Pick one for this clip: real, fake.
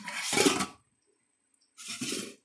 fake